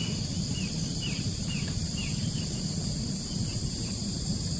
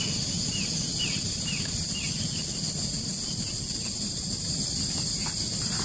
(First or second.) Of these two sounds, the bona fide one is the second